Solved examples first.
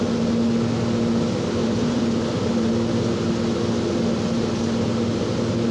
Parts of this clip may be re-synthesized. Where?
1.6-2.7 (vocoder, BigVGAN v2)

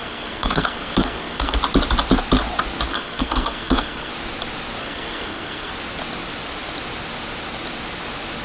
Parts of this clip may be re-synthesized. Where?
0.0-1.6 (codec, SNAC); 2.9-4.1; 4.8-5.7

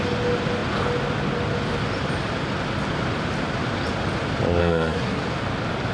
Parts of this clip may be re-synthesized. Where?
4.6-5.2 (codec, SNAC)

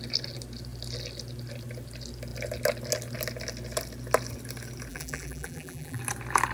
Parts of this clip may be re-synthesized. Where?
4.9-6.0 (vocoder, BigVGAN v2)

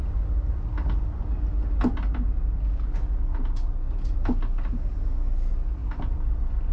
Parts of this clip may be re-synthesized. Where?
5.8-6.7 (vocoder, BigVGAN v2)